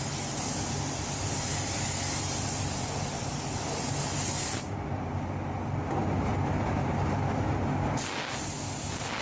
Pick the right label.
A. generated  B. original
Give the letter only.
B